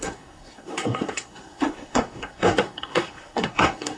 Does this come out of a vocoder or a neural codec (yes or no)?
yes